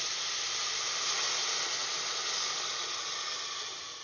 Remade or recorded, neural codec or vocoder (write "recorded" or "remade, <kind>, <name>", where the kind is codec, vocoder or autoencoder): recorded